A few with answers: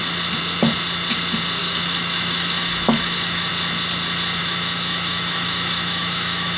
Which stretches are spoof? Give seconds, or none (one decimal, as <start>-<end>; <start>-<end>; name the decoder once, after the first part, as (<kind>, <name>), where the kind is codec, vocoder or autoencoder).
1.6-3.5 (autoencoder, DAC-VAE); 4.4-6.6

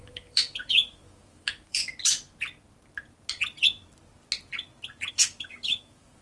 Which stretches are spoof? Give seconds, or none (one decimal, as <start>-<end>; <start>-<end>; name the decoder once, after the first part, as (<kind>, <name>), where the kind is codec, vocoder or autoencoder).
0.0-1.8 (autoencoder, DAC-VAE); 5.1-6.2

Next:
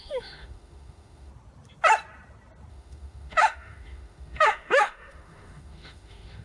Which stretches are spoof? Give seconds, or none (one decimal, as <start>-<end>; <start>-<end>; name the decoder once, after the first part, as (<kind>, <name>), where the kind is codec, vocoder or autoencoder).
0.0-1.3 (autoencoder, DAC-VAE); 2.7-6.4

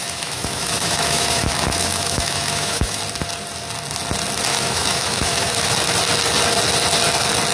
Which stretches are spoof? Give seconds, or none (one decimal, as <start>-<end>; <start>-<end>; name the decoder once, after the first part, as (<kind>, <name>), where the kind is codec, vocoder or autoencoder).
0.0-3.0 (autoencoder, DAC-VAE); 4.5-5.7

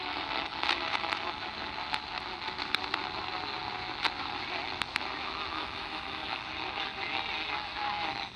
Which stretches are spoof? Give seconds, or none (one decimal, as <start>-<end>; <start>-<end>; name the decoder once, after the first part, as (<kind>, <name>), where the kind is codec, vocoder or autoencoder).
5.5-6.4 (autoencoder, DAC-VAE)